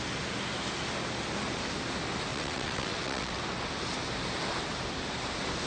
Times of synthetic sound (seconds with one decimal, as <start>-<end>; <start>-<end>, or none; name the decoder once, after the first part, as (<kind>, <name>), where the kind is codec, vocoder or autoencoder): 2.3-3.4 (vocoder, WaveNeXt)